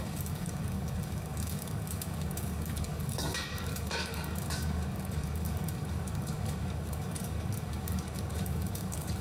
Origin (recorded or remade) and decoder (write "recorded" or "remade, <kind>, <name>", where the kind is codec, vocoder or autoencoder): remade, codec, DAC